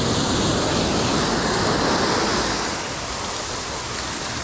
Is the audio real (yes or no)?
yes